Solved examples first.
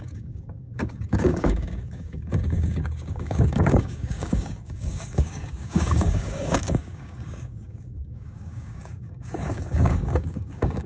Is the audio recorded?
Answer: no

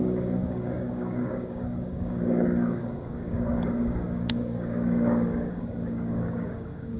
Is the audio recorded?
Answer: no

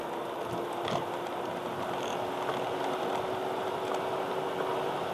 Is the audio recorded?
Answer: yes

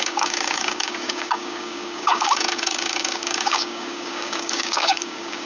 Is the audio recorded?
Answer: no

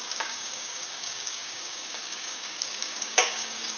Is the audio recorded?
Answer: no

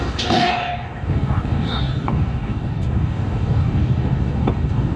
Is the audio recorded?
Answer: no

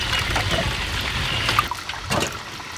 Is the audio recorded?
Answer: yes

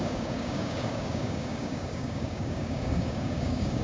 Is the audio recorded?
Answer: no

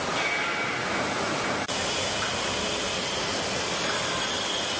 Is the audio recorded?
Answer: yes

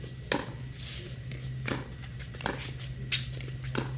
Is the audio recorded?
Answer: yes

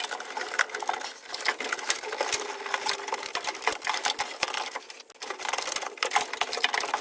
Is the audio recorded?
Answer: yes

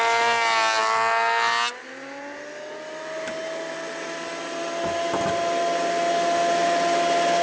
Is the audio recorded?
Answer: yes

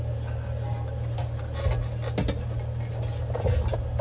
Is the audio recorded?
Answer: yes